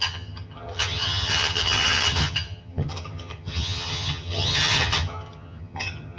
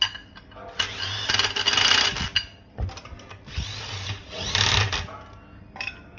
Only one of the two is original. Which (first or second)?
second